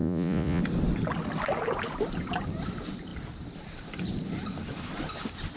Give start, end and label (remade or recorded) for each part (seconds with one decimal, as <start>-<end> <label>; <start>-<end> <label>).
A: 0.0-0.6 remade; 0.6-5.6 recorded